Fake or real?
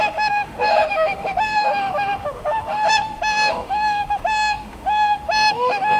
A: fake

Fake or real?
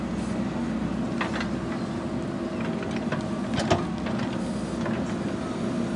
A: real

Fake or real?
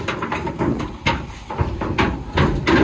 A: real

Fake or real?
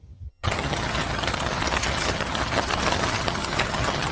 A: fake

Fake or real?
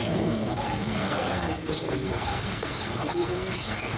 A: fake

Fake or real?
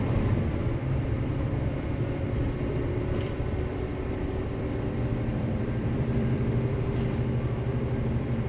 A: fake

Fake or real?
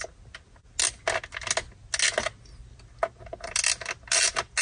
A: real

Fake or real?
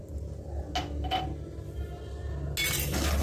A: real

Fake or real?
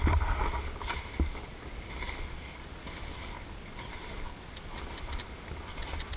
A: real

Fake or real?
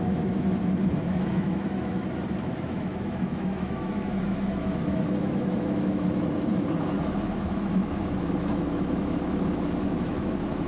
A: fake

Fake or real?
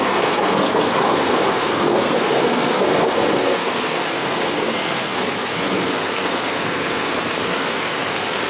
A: fake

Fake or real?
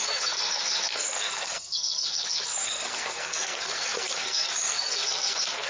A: fake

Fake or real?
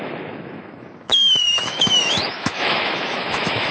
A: fake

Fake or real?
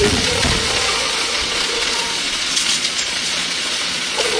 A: fake